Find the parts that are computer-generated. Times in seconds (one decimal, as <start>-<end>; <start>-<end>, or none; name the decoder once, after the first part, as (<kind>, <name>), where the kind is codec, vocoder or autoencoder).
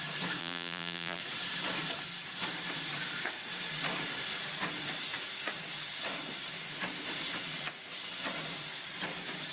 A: 0.4-1.2 (vocoder, BigVGAN v2)